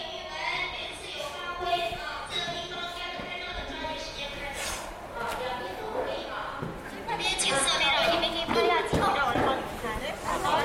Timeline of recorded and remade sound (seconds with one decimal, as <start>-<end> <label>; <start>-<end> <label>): 0.0-0.8 recorded; 0.8-4.4 remade; 4.4-10.6 recorded